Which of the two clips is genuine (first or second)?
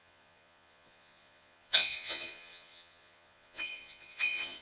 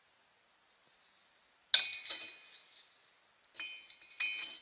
second